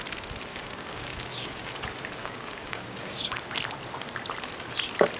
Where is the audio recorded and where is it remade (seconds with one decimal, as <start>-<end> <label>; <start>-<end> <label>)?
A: 0.0-0.5 recorded; 0.5-1.7 remade; 1.7-2.2 recorded; 2.2-3.3 remade; 3.3-5.2 recorded